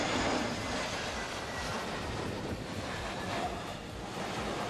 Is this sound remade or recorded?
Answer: recorded